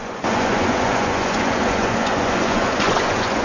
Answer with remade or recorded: remade